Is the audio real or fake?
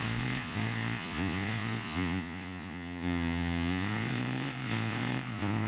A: fake